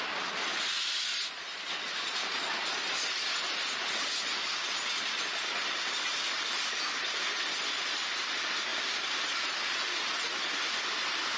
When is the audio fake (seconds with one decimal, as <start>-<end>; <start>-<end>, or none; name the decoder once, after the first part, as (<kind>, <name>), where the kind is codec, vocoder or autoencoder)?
none